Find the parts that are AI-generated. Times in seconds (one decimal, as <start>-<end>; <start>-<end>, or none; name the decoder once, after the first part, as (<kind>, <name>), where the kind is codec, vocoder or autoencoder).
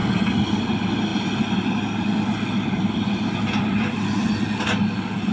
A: none